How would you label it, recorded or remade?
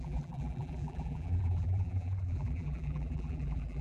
remade